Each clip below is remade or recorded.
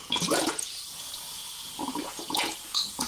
remade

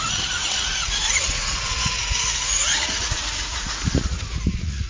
remade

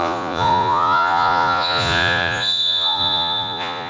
remade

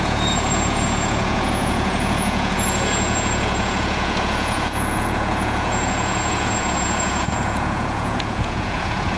remade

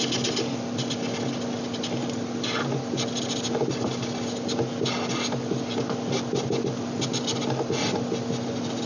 recorded